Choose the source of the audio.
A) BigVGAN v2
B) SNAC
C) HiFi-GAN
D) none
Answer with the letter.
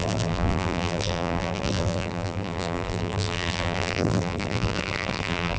A